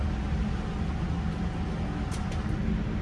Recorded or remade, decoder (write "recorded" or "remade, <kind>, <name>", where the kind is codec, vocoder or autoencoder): recorded